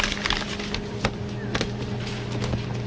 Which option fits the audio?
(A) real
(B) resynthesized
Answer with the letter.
A